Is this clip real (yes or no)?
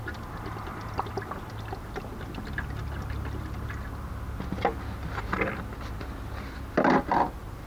yes